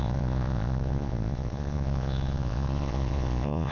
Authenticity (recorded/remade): remade